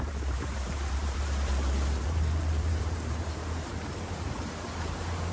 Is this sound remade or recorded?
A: remade